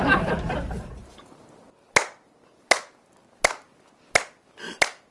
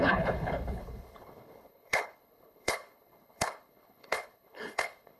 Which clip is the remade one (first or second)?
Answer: second